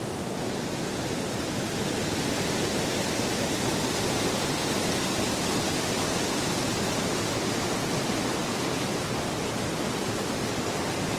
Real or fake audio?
real